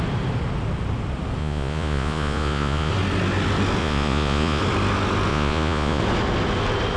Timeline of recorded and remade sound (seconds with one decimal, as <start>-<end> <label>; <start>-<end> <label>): 0.0-1.4 recorded; 1.4-2.9 remade; 2.9-3.8 recorded; 3.8-4.6 remade; 4.6-5.3 recorded; 5.3-6.0 remade; 6.0-7.0 recorded